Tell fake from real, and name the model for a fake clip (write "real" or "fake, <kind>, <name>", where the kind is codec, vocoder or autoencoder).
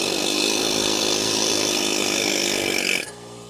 fake, codec, SNAC